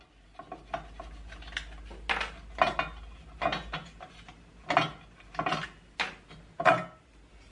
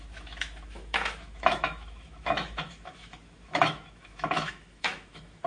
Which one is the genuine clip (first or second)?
first